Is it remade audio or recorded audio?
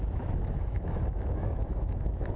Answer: remade